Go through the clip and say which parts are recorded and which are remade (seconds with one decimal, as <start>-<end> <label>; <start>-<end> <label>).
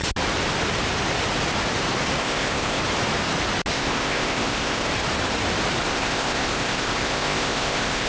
0.0-2.2 recorded; 2.2-2.8 remade; 2.8-3.7 recorded; 3.7-4.9 remade; 4.9-5.9 recorded; 5.9-8.1 remade